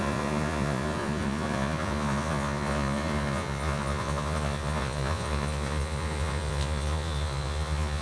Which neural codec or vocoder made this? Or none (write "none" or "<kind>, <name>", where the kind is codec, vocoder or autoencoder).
vocoder, Vocos